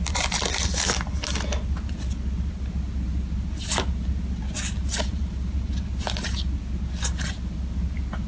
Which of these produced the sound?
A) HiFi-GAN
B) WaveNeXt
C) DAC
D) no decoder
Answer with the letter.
D